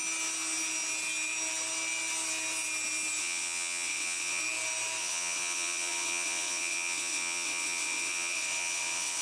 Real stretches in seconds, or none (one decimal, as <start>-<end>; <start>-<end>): 0.0-3.2; 4.4-5.0